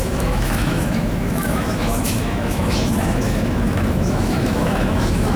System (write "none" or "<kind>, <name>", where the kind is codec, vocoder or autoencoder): autoencoder, DAC-VAE